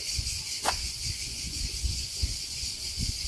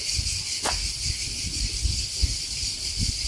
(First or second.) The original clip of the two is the second